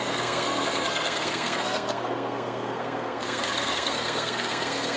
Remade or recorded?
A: remade